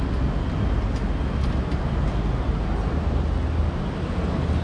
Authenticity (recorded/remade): recorded